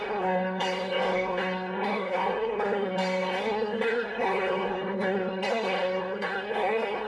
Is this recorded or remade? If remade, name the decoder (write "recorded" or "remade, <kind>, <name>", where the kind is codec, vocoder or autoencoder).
remade, codec, SNAC